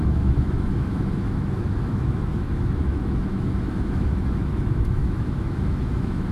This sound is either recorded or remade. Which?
remade